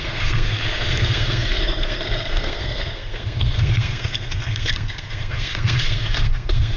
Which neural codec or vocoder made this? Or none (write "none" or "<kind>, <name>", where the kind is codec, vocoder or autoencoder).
codec, SNAC